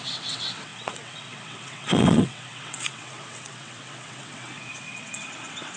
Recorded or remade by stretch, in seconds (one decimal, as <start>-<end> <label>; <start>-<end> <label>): 0.0-5.8 remade